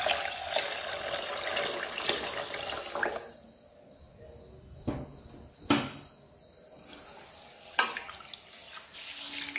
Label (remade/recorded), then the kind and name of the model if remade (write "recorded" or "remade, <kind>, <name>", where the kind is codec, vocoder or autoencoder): recorded